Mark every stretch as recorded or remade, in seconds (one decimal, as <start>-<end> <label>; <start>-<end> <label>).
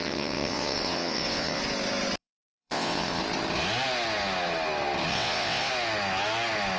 0.0-1.6 remade; 1.6-2.2 recorded; 2.2-3.2 remade; 3.2-5.1 recorded; 5.1-5.7 remade; 5.7-6.8 recorded